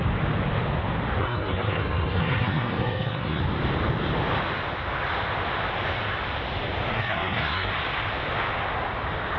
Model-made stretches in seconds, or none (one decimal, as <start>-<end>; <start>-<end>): 1.2-3.4; 6.9-7.7